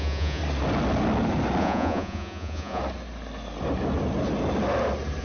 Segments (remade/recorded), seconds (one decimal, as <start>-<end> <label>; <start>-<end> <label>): 0.0-0.4 remade; 0.4-1.6 recorded; 1.6-2.8 remade; 2.8-5.2 recorded

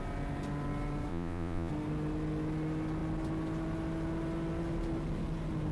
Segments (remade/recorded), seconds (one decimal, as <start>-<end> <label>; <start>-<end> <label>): 0.0-1.1 recorded; 1.1-1.7 remade; 1.7-5.7 recorded

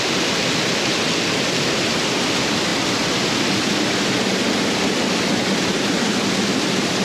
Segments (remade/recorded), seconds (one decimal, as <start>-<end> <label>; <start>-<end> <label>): 0.0-7.0 recorded